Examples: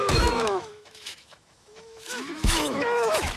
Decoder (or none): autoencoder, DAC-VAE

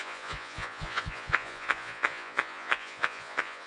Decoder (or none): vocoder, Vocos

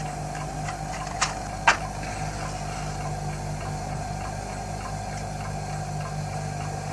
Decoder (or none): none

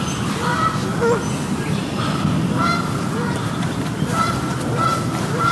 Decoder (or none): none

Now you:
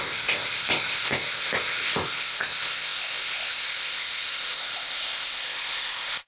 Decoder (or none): codec, ZipCodec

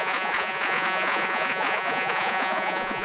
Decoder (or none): vocoder, Vocos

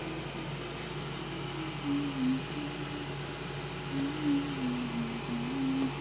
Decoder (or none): none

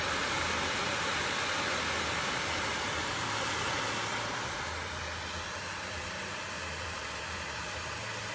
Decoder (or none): none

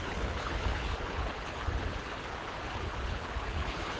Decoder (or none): codec, HILCodec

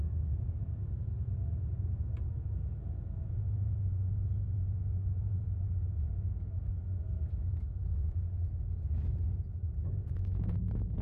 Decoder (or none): vocoder, Vocos